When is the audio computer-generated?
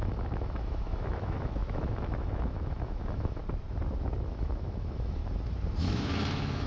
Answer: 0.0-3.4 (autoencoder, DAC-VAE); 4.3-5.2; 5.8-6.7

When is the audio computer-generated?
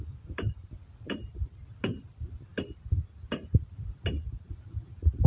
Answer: none